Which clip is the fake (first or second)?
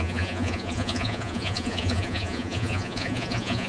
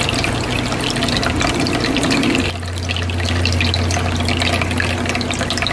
first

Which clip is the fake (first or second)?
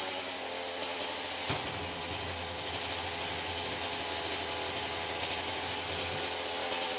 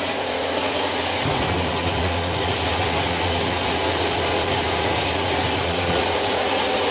second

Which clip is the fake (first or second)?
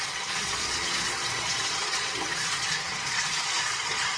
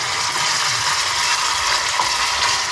first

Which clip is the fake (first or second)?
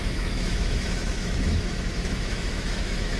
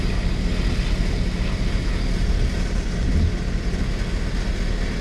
first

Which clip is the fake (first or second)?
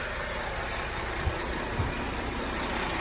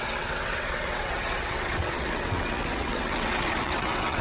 second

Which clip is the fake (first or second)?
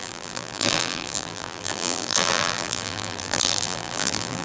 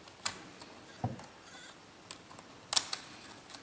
first